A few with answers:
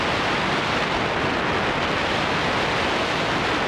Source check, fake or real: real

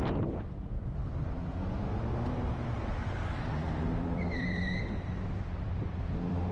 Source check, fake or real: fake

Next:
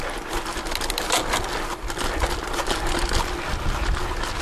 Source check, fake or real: real